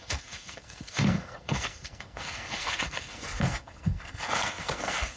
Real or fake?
fake